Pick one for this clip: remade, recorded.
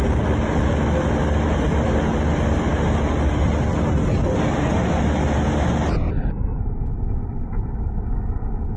recorded